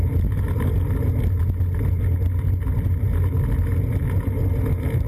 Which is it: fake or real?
real